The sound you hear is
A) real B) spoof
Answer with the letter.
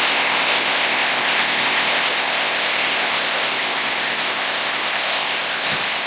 B